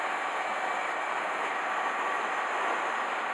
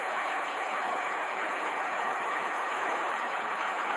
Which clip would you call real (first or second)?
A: first